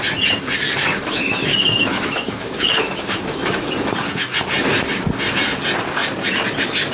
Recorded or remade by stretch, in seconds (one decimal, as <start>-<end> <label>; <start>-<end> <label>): 0.0-0.9 recorded; 0.9-3.8 remade; 3.8-6.9 recorded